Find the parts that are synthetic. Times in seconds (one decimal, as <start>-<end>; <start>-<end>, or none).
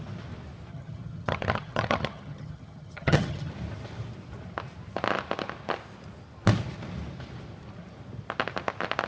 0.7-3.5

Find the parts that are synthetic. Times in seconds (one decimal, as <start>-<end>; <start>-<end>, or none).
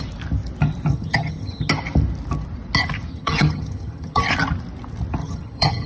0.9-1.7; 3.1-4.2; 5.2-5.9